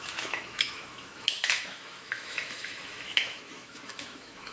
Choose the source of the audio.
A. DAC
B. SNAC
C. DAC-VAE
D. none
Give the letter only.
C